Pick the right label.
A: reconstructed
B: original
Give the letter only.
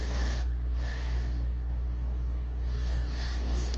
A